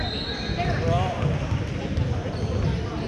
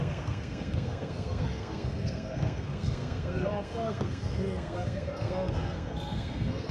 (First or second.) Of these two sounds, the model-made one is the second